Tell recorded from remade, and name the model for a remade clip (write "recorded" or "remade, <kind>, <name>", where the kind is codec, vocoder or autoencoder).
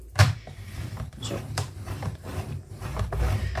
remade, vocoder, BigVGAN v2